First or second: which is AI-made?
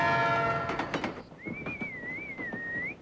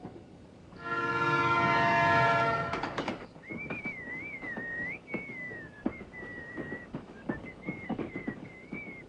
second